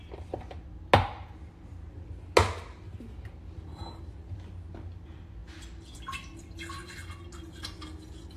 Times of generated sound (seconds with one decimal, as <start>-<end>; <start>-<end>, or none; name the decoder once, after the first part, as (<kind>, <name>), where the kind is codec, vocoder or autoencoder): none